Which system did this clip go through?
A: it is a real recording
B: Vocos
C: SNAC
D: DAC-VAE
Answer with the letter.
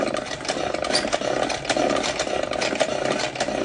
A